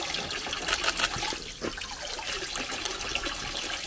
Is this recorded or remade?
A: recorded